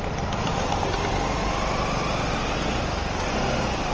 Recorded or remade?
recorded